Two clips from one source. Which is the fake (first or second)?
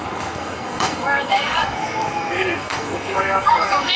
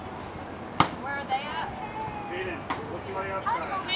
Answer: first